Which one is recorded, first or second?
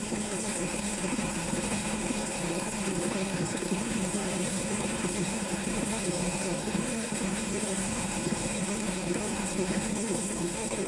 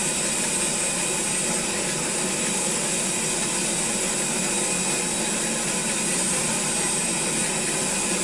second